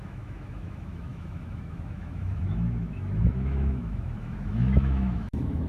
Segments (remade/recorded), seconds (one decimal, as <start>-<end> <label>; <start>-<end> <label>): 0.0-5.7 remade